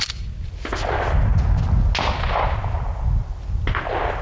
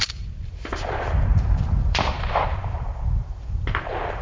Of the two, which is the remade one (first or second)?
second